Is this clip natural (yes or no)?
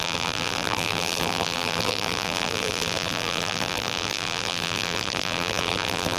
no